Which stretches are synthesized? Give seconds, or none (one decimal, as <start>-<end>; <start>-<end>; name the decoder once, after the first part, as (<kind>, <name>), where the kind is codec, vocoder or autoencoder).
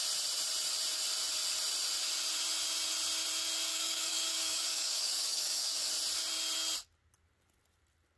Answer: 3.7-5.9 (codec, DAC)